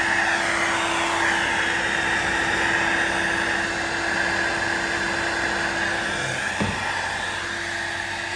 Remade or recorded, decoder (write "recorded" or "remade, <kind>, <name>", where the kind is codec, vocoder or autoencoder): recorded